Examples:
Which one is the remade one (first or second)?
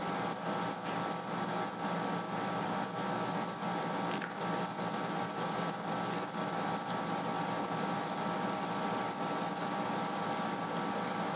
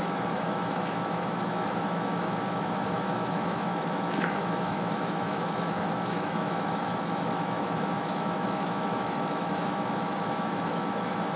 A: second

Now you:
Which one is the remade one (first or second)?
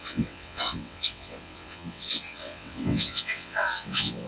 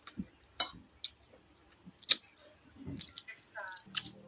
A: first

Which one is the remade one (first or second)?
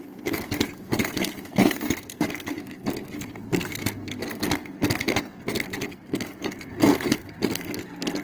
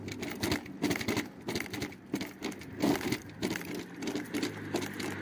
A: first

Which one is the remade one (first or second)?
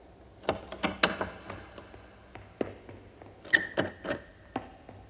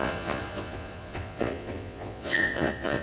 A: second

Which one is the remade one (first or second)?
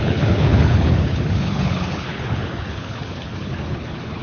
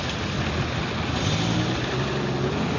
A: first